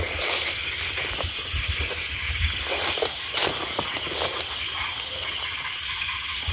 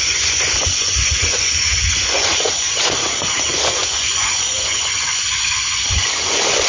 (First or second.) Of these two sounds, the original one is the first